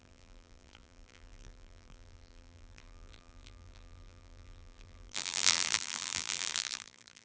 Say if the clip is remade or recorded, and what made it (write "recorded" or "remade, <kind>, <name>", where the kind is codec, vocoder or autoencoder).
remade, vocoder, BigVGAN v2